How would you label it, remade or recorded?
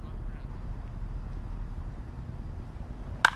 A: recorded